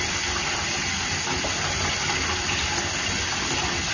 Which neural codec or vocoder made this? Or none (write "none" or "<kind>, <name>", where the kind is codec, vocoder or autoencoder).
none